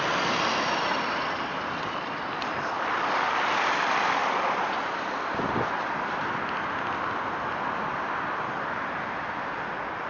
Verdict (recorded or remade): remade